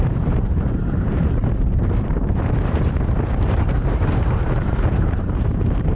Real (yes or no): no